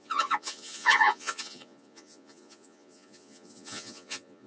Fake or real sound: fake